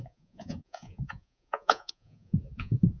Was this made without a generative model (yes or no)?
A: no